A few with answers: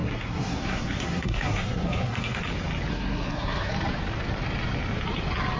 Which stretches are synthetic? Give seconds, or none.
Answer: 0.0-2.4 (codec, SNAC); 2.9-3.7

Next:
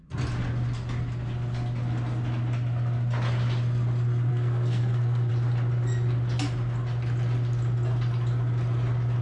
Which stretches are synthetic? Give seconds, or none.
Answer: 4.3-5.3 (codec, SNAC)

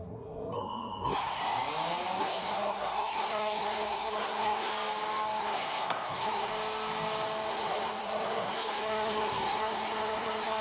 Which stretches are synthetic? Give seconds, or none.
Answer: 0.0-1.4 (codec, SNAC); 2.2-4.7; 5.4-6.5; 7.5-10.6

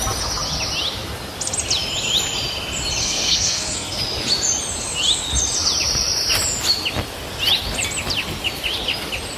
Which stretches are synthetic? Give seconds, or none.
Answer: 3.0-4.0 (codec, SNAC)

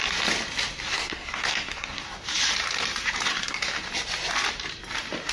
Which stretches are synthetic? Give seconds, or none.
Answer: 0.9-2.0 (codec, SNAC); 3.3-3.8

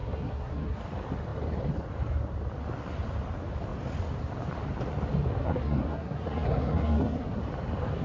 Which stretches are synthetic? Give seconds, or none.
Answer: 0.0-0.8 (codec, SNAC); 5.4-7.4

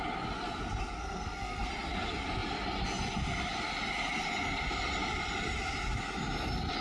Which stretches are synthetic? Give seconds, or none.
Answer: 1.0-1.7 (codec, SNAC)